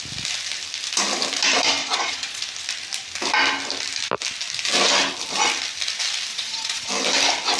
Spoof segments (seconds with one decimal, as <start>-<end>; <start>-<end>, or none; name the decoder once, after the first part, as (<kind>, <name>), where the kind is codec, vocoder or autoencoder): 1.8-2.4 (vocoder, Vocos); 6.3-6.9